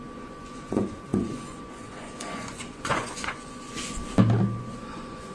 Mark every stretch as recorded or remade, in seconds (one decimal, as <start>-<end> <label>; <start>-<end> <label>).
0.0-4.0 remade; 4.0-4.6 recorded; 4.6-5.3 remade